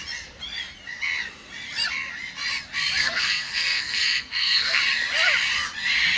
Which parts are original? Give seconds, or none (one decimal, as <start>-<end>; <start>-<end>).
0.0-3.0; 4.8-6.2